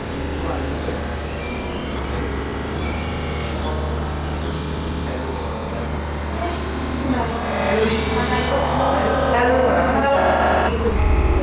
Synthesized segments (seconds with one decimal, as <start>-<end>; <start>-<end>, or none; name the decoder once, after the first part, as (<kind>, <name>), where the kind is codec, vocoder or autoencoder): 2.5-3.1 (vocoder, BigVGAN v2)